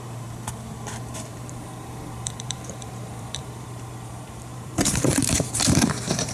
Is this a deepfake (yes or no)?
yes